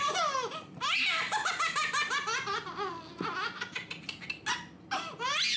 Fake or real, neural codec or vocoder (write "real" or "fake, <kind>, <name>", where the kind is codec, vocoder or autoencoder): real